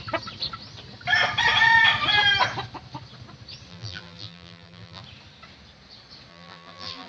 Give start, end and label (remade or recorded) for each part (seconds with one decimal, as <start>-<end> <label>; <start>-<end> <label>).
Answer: 0.0-3.7 recorded; 3.7-5.0 remade; 5.0-6.3 recorded; 6.3-7.1 remade